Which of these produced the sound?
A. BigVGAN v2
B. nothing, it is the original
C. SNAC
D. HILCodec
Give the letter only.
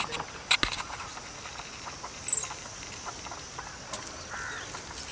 B